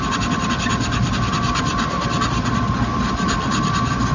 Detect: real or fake real